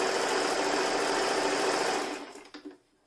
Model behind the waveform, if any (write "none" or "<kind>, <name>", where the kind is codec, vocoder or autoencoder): none